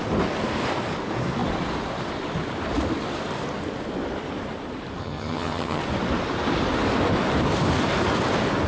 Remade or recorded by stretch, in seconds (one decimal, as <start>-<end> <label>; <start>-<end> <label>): 0.0-5.0 recorded; 5.0-5.8 remade; 5.8-8.7 recorded